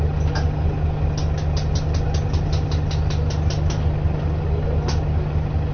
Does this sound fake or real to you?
real